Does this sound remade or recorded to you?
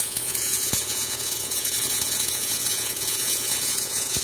remade